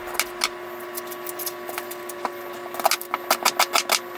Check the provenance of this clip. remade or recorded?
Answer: recorded